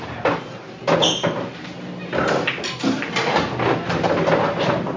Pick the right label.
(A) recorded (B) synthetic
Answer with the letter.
A